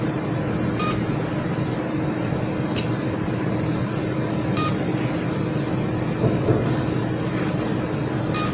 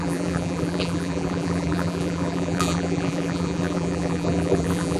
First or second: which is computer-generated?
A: second